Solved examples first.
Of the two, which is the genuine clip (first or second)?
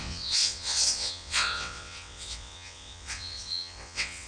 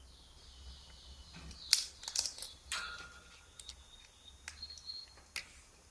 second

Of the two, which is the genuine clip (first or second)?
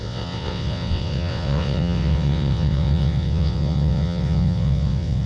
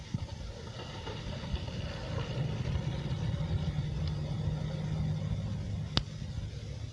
second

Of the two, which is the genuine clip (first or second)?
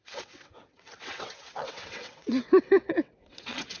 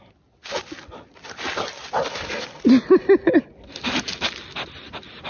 second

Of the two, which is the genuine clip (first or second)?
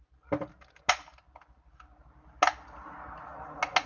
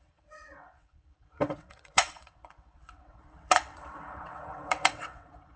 first